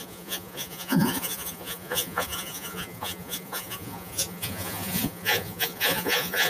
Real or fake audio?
fake